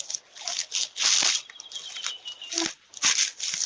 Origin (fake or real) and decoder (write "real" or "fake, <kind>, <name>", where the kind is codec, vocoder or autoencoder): real